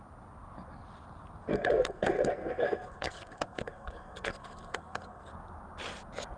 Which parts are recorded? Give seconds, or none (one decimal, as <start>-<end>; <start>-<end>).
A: 0.0-1.5; 5.3-6.4